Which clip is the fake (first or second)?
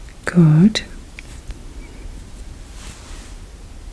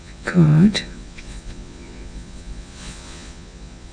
second